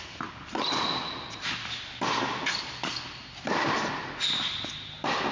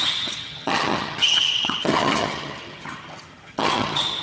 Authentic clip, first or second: first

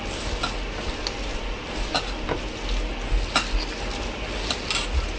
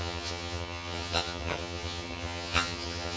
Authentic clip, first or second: first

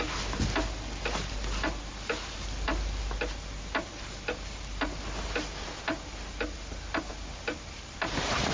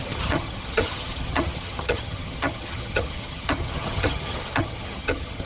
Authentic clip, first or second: first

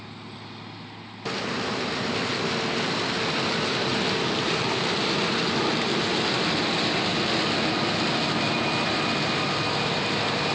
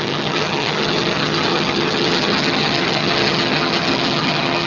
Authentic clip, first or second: first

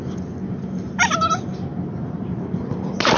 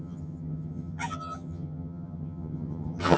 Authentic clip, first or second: first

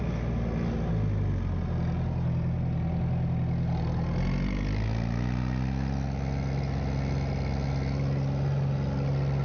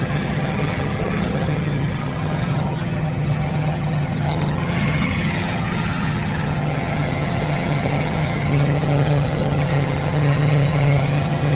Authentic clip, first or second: first